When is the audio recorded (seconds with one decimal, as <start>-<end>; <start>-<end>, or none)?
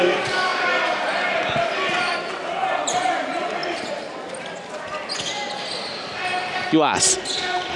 0.5-2.1; 3.6-7.8